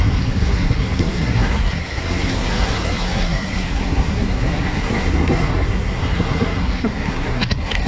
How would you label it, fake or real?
fake